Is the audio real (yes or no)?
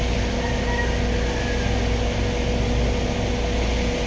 yes